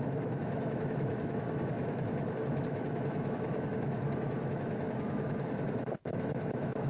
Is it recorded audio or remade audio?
remade